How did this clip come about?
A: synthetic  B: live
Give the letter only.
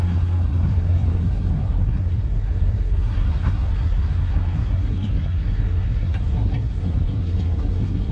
A